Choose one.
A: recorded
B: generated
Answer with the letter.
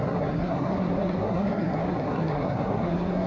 B